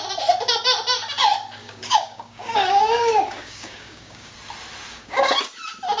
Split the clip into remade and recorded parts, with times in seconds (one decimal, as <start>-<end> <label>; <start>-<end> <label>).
0.0-1.6 recorded; 1.6-4.3 remade; 4.3-4.9 recorded; 4.9-5.4 remade; 5.4-6.0 recorded